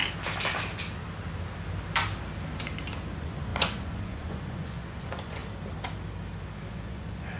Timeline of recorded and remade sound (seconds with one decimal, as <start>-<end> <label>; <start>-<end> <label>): 0.0-3.1 recorded; 3.1-5.4 remade; 5.4-6.7 recorded; 6.7-7.4 remade